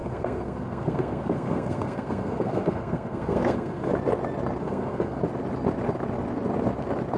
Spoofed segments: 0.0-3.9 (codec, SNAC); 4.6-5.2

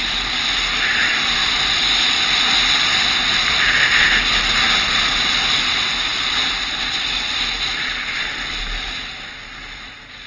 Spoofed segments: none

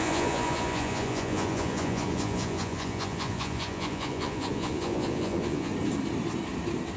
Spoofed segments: 0.0-5.7 (vocoder, Vocos)